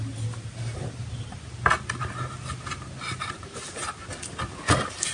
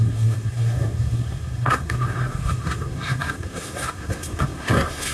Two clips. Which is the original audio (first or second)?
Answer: first